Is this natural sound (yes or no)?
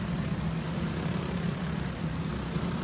yes